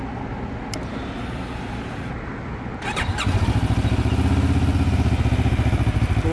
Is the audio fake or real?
real